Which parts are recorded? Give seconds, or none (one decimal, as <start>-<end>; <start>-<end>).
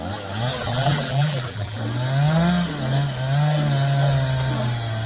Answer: 0.0-0.6; 1.8-5.1